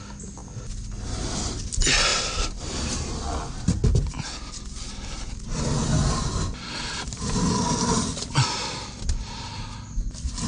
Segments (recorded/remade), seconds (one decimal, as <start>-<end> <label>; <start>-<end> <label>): 0.0-10.5 recorded